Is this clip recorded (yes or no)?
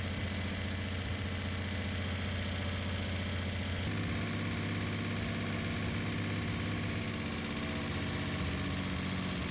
yes